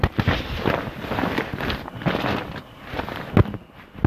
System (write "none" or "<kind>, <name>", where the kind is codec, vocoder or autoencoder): none